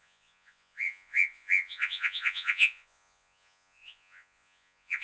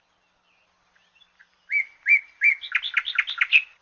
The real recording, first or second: second